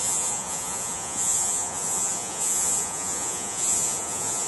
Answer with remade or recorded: remade